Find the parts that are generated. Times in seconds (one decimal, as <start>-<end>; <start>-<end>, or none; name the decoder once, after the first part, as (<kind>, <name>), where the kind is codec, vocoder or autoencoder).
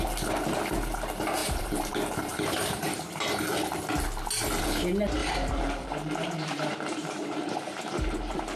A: 1.4-1.9 (vocoder, BigVGAN v2); 2.3-3.4; 5.2-8.6